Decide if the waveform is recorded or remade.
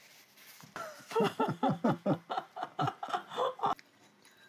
recorded